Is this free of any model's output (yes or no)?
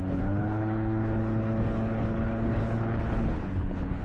no